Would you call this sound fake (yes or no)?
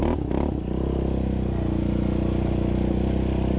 no